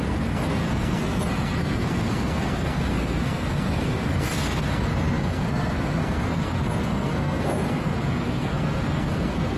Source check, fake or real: fake